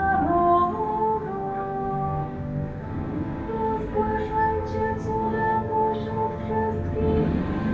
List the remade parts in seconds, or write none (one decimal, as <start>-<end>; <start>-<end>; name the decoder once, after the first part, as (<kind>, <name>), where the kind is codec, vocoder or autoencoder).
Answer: 0.9-4.0 (codec, DAC); 4.7-6.4